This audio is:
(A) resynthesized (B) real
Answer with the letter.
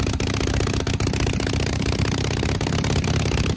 B